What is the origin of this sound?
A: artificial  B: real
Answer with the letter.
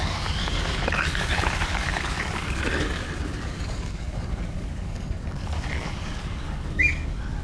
A